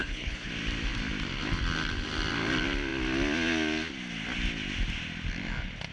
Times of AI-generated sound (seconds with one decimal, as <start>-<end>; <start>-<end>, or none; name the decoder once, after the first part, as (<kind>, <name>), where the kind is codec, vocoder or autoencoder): 0.0-0.5 (codec, HILCodec)